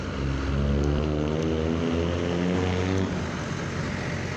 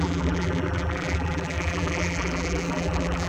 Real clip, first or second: first